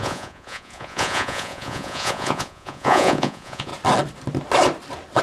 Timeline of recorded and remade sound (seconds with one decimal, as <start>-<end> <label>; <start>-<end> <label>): 0.0-3.7 remade; 3.7-5.2 recorded